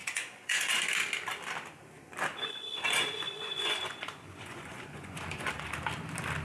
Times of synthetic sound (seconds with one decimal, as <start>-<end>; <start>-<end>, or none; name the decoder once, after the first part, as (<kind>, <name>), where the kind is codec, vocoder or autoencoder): 0.0-0.8 (vocoder, Vocos); 2.3-5.7